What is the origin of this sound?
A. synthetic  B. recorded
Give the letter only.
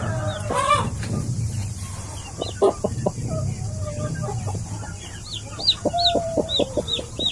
A